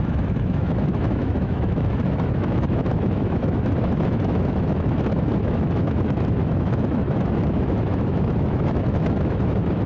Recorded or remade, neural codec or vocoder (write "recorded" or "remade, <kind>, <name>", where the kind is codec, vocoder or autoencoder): remade, autoencoder, DAC-VAE